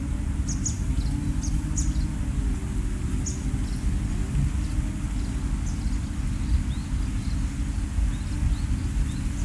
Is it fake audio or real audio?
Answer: real